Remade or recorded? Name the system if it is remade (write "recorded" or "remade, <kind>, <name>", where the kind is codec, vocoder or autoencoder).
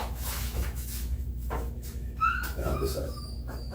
remade, autoencoder, DAC-VAE